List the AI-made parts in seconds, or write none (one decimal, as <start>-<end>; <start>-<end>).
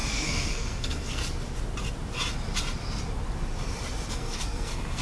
0.0-1.2; 4.1-5.0